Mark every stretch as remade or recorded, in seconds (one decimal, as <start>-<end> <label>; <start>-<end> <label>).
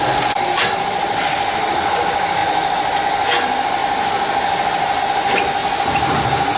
0.0-6.6 recorded